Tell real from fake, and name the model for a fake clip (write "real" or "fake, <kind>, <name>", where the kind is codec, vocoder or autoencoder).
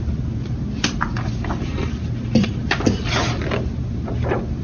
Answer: real